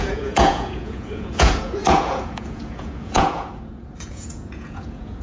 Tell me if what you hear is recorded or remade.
remade